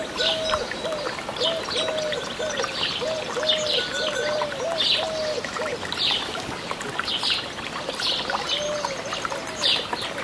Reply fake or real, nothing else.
real